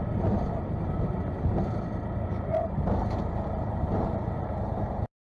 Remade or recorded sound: recorded